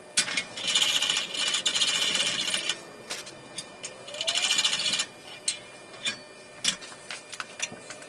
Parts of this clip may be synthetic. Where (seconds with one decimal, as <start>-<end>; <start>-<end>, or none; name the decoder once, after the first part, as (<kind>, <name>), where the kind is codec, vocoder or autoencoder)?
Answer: 1.7-2.2 (vocoder, Vocos)